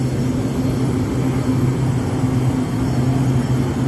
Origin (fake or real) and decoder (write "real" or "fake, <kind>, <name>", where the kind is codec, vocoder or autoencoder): real